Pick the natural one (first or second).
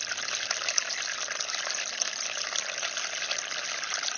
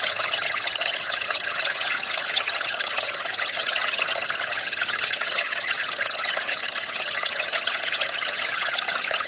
first